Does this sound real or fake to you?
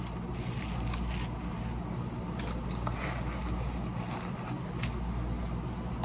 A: real